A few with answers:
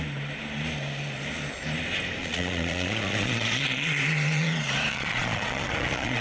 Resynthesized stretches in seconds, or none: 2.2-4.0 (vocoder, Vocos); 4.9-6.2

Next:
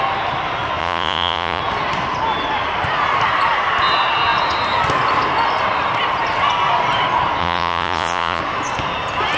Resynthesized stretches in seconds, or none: 0.8-1.6 (vocoder, Vocos); 7.4-8.4

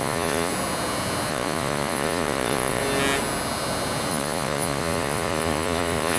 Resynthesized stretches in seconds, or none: 0.0-0.5 (vocoder, Vocos); 1.3-2.8; 4.1-6.2

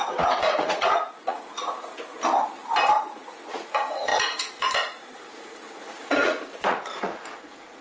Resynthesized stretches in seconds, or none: 0.0-1.9 (vocoder, Vocos); 3.1-7.8

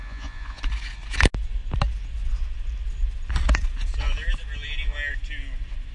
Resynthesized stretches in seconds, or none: 0.0-0.6 (vocoder, Vocos)

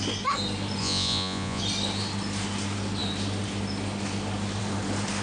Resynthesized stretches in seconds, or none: 0.8-1.6 (vocoder, Vocos)